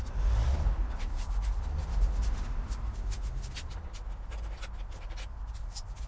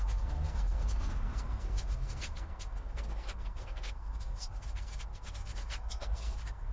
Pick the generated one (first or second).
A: second